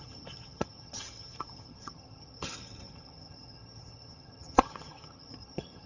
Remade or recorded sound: remade